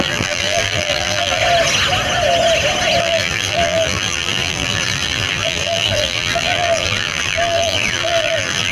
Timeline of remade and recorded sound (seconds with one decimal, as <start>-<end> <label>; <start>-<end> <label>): 0.0-1.4 remade; 1.4-3.0 recorded; 3.0-8.7 remade

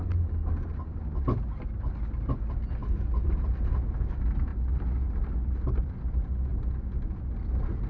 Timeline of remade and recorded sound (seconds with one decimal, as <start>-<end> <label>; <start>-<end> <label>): 0.0-2.8 recorded; 2.8-3.5 remade; 3.5-7.9 recorded